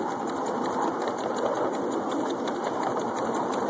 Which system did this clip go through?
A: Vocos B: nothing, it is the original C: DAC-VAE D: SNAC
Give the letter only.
B